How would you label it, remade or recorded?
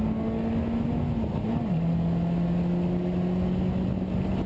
recorded